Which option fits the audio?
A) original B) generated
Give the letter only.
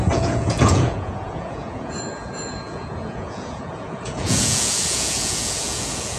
B